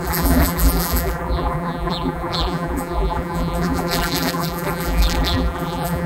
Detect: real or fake fake